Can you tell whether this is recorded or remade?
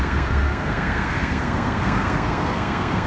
remade